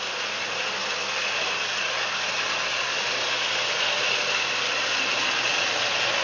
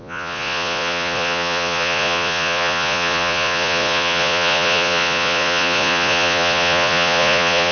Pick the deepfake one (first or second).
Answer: second